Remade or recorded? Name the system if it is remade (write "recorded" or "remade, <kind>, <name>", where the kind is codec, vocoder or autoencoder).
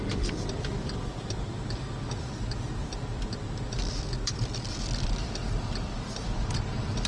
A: remade, vocoder, BigVGAN v2